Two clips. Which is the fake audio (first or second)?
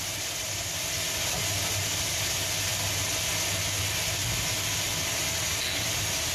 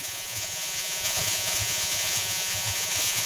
second